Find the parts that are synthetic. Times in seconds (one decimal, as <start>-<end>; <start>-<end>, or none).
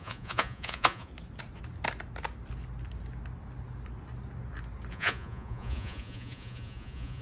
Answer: 0.0-1.1; 4.9-7.2